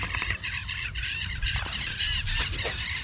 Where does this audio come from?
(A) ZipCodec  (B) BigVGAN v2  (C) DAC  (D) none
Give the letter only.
B